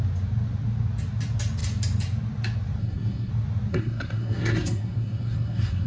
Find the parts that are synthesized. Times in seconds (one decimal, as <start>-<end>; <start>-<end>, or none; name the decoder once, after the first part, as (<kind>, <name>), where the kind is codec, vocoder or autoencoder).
2.8-3.3 (codec, SNAC); 3.7-5.9